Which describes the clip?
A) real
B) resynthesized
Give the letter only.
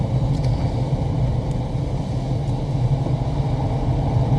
A